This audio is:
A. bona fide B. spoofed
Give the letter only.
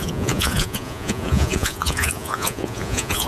B